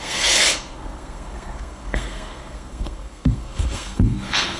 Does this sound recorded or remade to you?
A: remade